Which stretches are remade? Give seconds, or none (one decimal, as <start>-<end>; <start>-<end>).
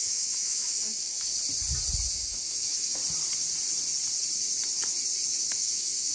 0.0-1.3; 2.1-3.0; 5.4-6.1